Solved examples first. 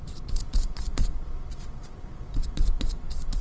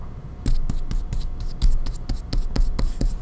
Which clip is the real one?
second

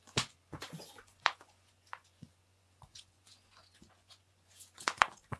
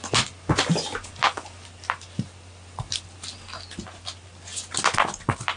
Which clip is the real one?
second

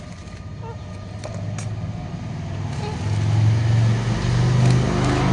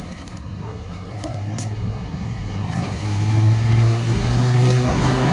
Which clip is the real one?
first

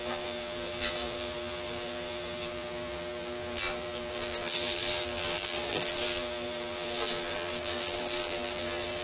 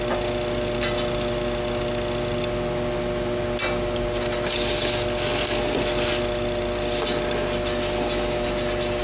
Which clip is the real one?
second